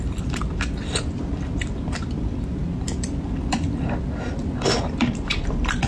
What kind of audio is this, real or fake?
real